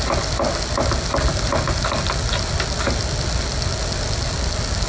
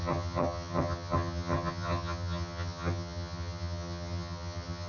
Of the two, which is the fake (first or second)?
second